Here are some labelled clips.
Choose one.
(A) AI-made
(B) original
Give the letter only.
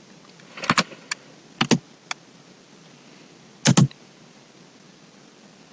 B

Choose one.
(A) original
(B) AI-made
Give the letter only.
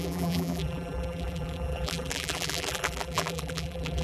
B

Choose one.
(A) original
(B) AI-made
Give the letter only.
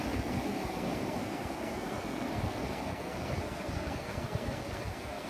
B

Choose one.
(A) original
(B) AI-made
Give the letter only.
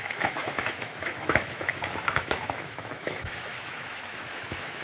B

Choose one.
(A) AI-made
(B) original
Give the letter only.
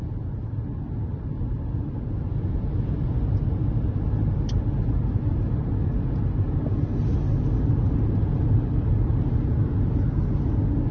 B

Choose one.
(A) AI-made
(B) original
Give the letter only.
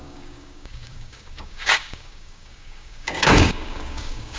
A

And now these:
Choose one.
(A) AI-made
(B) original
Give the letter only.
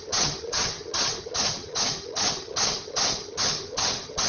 A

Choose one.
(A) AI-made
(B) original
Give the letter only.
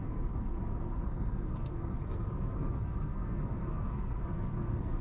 A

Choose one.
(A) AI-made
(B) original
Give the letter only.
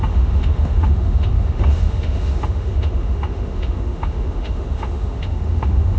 A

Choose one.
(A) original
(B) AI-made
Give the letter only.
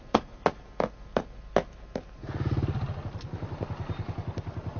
A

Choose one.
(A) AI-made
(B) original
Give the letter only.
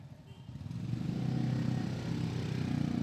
B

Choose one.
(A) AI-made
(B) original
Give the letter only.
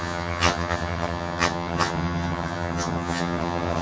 A